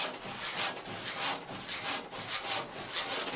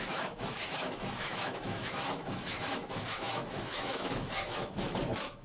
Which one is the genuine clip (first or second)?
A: first